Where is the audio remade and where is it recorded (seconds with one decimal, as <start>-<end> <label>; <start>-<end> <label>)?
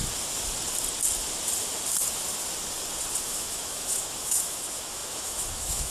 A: 0.0-3.2 recorded; 3.2-5.9 remade